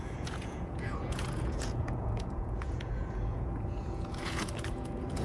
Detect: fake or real fake